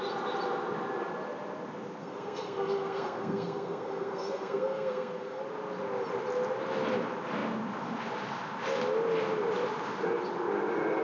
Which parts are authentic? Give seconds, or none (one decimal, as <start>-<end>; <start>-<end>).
0.0-2.0; 5.4-11.0